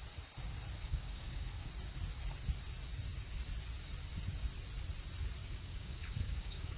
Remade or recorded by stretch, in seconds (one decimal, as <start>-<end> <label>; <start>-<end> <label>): 0.0-0.8 recorded; 0.8-1.7 remade; 1.7-5.4 recorded; 5.4-6.8 remade